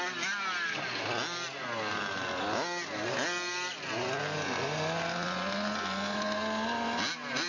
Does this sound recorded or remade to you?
recorded